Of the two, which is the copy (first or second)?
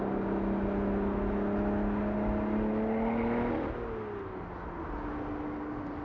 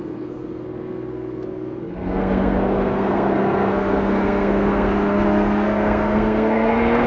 second